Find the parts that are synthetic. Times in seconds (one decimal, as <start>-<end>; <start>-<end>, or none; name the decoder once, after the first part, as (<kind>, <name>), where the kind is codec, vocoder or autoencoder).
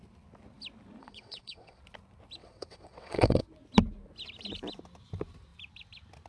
1.0-1.8 (vocoder, WaveNeXt); 2.4-3.4